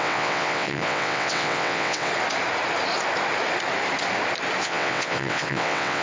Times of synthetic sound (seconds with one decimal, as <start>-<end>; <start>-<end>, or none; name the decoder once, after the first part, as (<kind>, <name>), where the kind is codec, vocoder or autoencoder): 0.0-2.1 (vocoder, WaveNeXt); 4.6-6.0